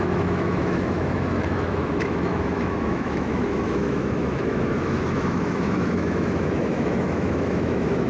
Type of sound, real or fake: fake